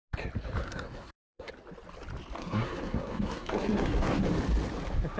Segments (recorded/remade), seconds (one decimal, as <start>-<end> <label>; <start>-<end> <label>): 0.0-0.6 recorded; 0.6-1.5 remade; 1.5-2.4 recorded; 2.4-4.2 remade; 4.2-5.2 recorded